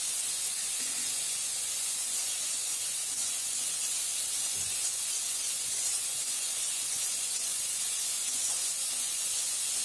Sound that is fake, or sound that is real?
fake